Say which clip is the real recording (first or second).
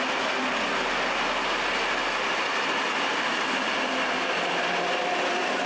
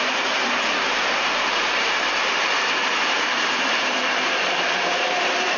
first